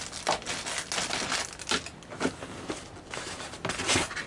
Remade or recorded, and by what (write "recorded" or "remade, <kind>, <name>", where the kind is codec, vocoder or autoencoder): recorded